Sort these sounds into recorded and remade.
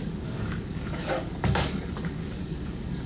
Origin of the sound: remade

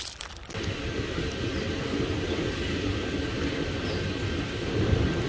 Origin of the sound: recorded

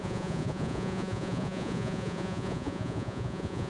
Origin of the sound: remade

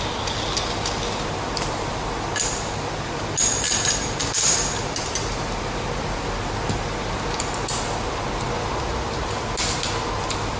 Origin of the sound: recorded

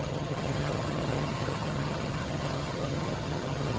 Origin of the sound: remade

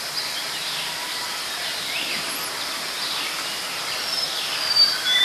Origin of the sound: recorded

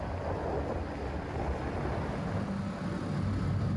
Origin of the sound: recorded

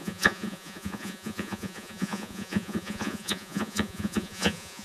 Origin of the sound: remade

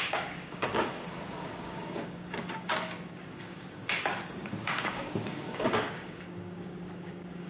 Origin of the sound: remade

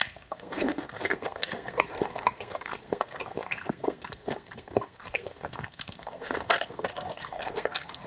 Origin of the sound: remade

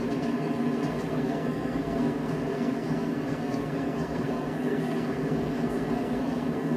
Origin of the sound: remade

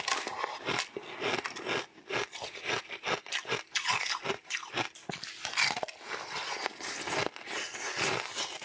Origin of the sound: recorded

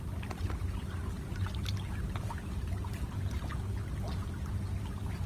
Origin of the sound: remade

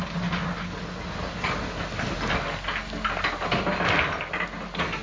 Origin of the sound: recorded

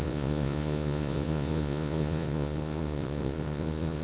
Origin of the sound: remade